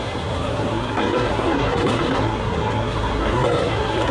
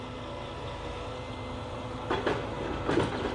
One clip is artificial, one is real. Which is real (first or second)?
second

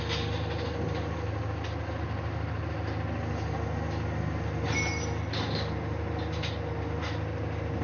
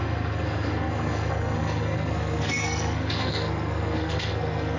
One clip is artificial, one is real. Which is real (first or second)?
first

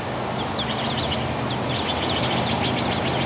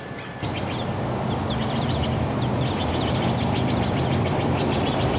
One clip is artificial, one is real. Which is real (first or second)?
first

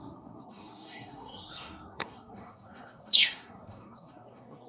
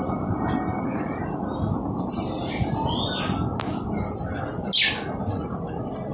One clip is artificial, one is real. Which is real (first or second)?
second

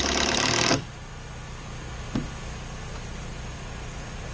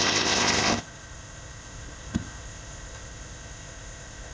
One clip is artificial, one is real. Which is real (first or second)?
first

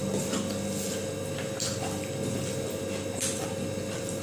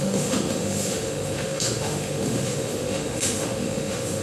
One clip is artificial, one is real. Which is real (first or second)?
first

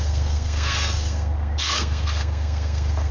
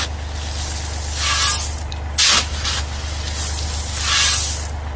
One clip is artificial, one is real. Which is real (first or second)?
second